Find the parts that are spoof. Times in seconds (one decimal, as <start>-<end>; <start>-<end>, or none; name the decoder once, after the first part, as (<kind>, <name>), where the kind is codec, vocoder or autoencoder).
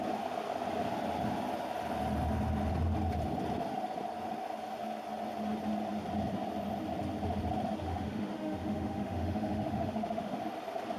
7.8-10.4 (autoencoder, DAC-VAE)